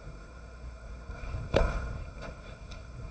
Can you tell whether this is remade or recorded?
remade